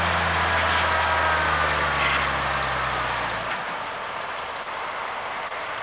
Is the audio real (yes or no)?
yes